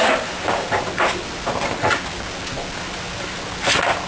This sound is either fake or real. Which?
real